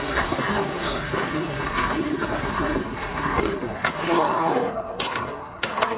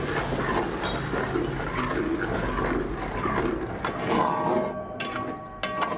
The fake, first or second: first